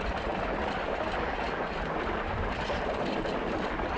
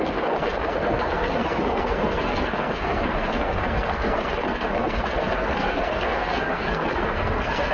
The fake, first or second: second